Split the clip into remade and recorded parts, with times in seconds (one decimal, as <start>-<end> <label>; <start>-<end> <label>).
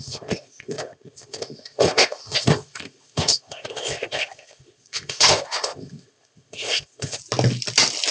0.0-7.2 remade; 7.2-8.1 recorded